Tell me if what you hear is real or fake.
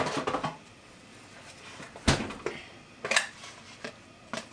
real